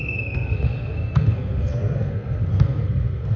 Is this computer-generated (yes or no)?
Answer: yes